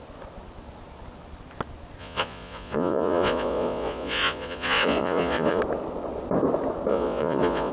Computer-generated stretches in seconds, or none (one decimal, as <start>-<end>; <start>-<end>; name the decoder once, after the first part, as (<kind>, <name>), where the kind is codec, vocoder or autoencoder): 2.0-5.6 (vocoder, Vocos); 6.9-7.7

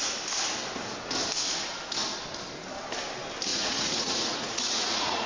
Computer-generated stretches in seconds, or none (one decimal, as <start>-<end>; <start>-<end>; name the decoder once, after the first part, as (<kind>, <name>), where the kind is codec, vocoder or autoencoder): 3.5-5.3 (vocoder, Vocos)

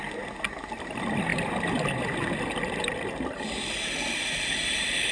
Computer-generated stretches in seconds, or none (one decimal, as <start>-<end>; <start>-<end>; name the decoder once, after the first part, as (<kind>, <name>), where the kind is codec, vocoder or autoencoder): none